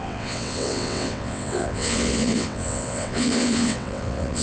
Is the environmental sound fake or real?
fake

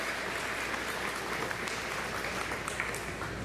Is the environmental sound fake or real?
real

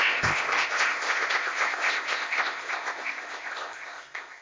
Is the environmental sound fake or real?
fake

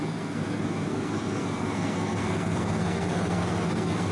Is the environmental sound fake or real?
fake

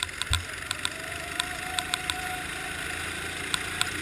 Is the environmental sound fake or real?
real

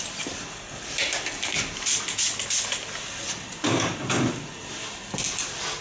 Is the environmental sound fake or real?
real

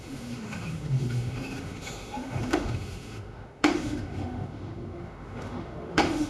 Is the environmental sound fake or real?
fake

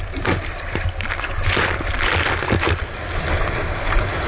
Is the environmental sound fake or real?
real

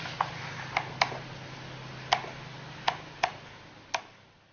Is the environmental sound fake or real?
real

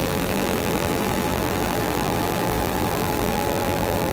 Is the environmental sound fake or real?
fake